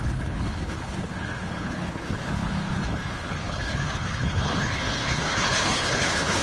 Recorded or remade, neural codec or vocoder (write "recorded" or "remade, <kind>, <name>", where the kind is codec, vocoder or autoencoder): remade, codec, HILCodec